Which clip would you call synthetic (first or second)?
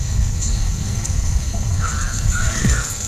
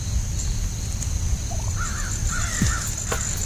first